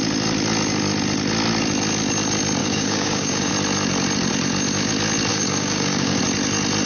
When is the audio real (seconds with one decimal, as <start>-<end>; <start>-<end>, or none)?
0.0-2.6; 3.5-5.3; 6.2-6.9

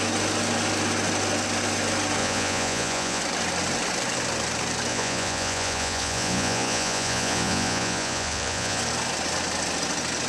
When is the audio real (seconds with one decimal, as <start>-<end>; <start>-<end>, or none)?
0.0-2.2; 3.2-4.9; 8.8-10.3

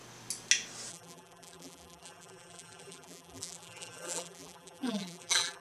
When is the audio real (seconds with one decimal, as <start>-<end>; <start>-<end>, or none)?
0.0-0.9

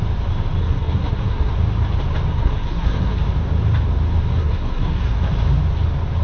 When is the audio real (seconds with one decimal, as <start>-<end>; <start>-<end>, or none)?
0.0-0.6; 1.5-2.3; 3.2-4.3; 5.3-6.2

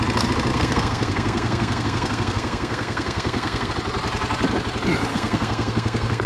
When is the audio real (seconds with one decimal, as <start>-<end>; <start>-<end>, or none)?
0.0-0.5; 3.7-5.1

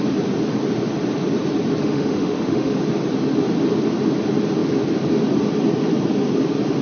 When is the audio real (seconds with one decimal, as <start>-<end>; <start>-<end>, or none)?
0.0-1.8; 2.8-6.8

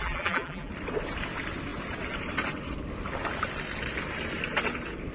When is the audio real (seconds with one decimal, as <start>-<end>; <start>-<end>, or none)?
0.7-5.1